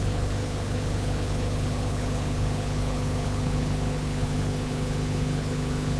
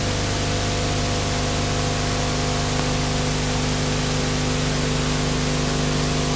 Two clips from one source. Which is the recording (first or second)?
second